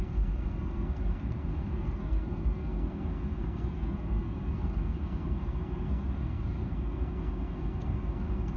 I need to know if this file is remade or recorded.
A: remade